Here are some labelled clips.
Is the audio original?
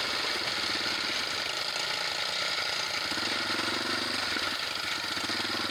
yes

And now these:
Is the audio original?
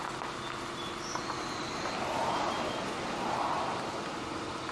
yes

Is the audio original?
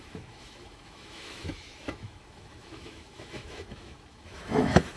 no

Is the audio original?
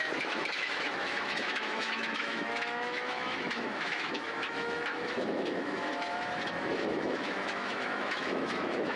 no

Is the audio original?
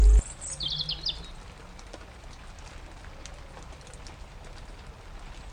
yes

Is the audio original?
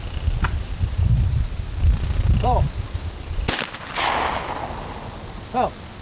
yes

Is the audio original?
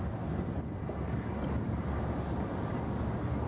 yes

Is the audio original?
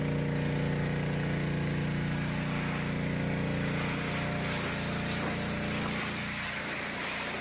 yes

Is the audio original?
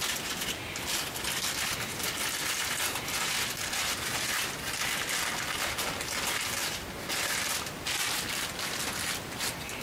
yes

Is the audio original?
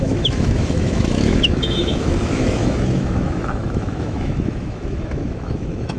no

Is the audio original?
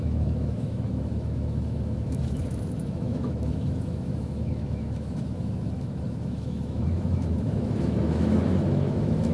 no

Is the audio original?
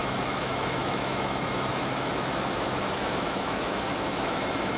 no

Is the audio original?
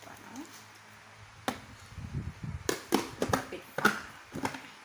yes